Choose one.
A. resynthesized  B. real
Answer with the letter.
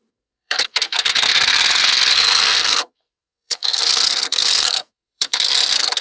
A